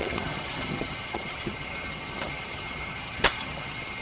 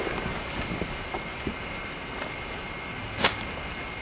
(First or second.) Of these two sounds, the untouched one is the second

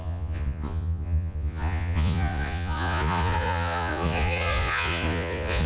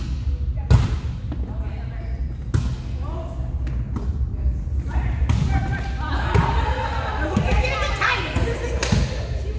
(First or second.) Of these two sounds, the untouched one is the second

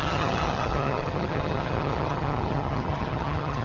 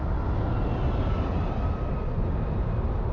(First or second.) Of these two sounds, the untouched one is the second